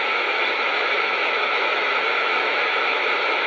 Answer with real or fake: fake